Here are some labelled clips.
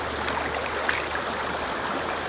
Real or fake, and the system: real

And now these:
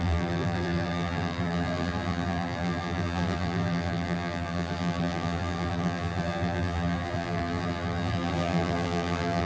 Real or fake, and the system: fake, vocoder, BigVGAN v2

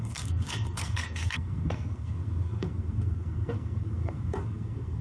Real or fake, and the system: fake, codec, SNAC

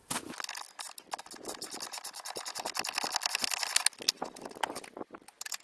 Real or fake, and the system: real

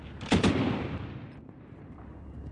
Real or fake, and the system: fake, vocoder, BigVGAN v2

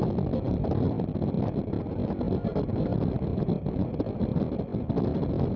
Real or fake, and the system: real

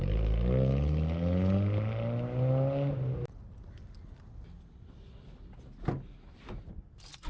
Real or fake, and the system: real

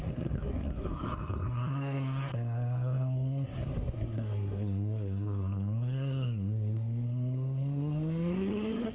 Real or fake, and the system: fake, codec, SNAC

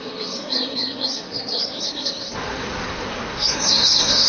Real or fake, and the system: fake, codec, SNAC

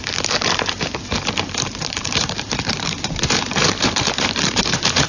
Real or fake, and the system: fake, vocoder, BigVGAN v2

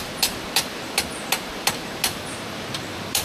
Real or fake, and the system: fake, vocoder, BigVGAN v2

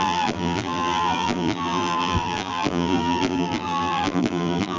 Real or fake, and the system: fake, vocoder, BigVGAN v2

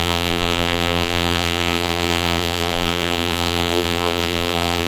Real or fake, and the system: fake, vocoder, BigVGAN v2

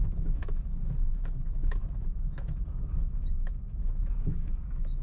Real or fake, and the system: fake, autoencoder, DAC-VAE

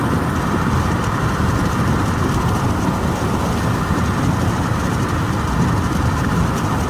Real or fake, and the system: real